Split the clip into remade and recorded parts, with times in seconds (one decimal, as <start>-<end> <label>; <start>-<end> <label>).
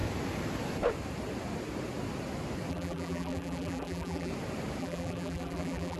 0.0-2.7 recorded; 2.7-4.3 remade; 4.3-4.8 recorded; 4.8-6.0 remade